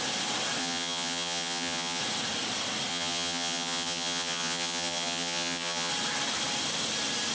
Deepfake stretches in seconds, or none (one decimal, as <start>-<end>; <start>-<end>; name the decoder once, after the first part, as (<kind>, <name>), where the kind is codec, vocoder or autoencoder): 0.6-2.0 (vocoder, HiFi-GAN); 2.9-5.9